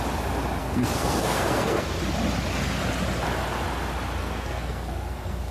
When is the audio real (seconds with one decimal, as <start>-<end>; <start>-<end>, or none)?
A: 0.0-0.6; 2.0-4.2